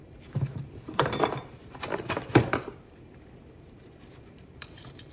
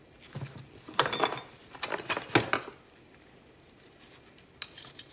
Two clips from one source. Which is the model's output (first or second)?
first